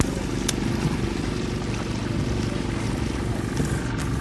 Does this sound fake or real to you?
real